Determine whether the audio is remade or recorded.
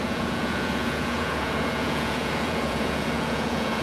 remade